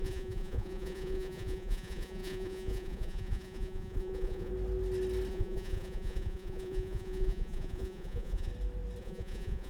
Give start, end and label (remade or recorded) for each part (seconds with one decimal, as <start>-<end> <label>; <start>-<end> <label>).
0.0-4.5 remade; 4.5-5.3 recorded; 5.3-8.5 remade; 8.5-9.0 recorded; 9.0-9.7 remade